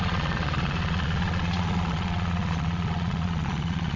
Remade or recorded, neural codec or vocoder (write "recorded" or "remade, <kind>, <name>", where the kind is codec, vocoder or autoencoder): remade, vocoder, Vocos